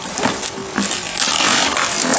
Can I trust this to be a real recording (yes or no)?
yes